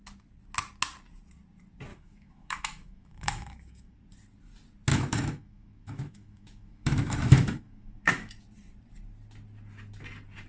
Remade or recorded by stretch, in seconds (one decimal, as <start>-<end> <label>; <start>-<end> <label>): 0.0-1.9 recorded; 1.9-3.9 remade; 3.9-4.9 recorded; 4.9-8.3 remade; 8.3-10.5 recorded